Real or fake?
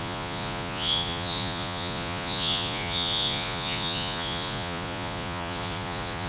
fake